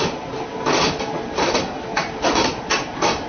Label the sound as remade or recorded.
recorded